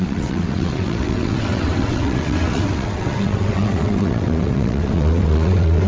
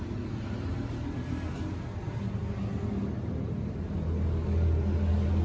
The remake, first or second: first